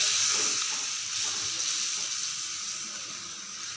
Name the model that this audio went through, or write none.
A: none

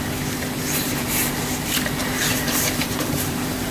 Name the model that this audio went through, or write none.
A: vocoder, BigVGAN v2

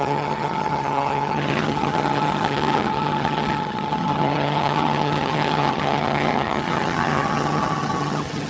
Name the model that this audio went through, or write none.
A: vocoder, HiFi-GAN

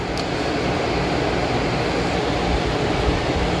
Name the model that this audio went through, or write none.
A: none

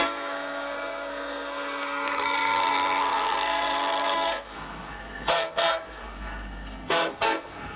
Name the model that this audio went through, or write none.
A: codec, SNAC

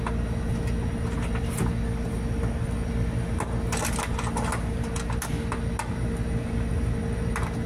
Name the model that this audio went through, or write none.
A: none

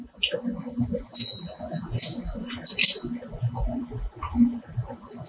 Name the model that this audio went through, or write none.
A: none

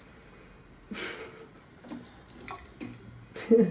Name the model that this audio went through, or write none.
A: none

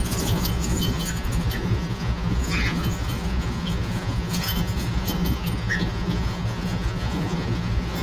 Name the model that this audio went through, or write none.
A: vocoder, Vocos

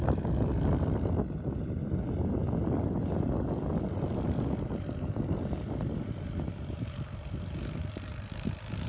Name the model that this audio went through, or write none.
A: none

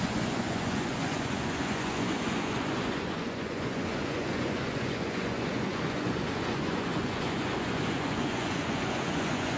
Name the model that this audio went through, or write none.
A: vocoder, Vocos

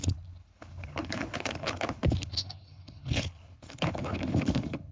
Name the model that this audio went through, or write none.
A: codec, HILCodec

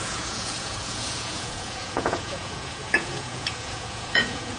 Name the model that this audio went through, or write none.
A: vocoder, Vocos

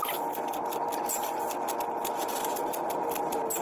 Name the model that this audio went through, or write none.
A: none